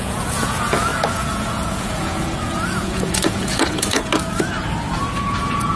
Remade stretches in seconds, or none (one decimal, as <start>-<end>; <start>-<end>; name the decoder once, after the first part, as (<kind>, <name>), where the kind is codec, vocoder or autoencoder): 0.0-4.1 (vocoder, Vocos); 5.1-5.8